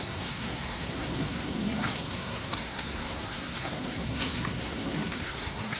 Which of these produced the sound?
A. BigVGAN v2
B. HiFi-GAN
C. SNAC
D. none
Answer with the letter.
C